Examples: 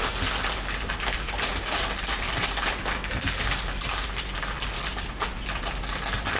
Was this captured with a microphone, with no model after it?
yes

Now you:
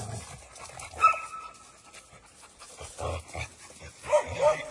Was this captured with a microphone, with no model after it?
yes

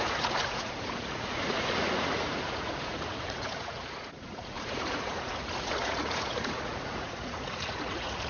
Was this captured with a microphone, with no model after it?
no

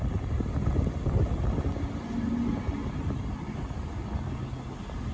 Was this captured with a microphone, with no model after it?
yes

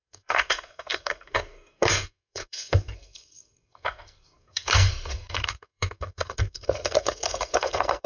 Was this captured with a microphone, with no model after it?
no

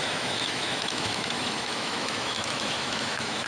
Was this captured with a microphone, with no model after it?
no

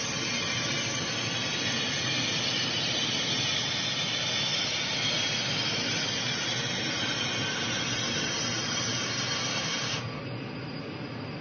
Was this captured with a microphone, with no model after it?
yes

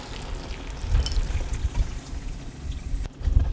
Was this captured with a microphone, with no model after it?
yes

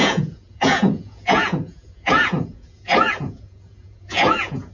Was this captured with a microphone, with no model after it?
no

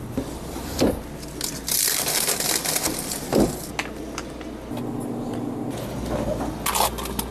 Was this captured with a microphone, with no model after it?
yes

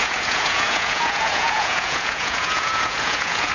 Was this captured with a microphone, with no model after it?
no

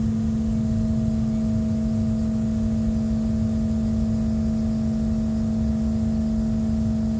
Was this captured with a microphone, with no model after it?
yes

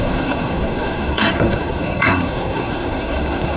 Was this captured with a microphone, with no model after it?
no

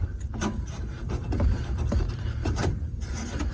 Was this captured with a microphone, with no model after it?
no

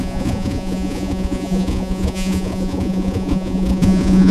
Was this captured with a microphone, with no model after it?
no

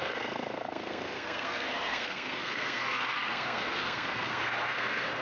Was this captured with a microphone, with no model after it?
no